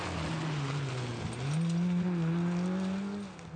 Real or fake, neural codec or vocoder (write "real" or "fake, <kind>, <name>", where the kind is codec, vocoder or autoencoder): real